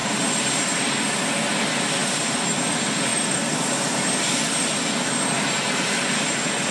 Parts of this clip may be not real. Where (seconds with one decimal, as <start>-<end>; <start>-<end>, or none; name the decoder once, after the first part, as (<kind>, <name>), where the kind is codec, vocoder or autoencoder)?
2.0-2.7 (vocoder, BigVGAN v2); 3.1-3.9